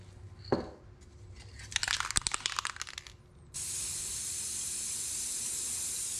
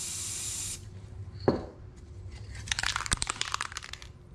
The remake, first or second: second